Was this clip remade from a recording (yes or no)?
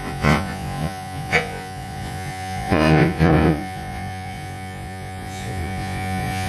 yes